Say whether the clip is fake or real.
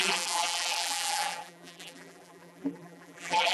fake